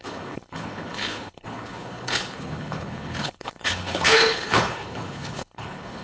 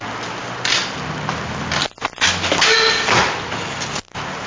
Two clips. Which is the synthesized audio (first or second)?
first